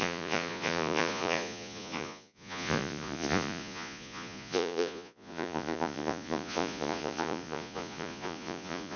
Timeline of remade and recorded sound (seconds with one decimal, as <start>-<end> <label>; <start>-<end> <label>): 0.0-9.0 remade